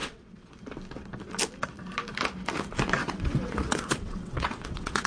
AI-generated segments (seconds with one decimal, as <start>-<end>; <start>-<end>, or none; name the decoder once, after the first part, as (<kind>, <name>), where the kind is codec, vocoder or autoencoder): 0.0-0.6 (vocoder, WaveNeXt); 3.0-5.1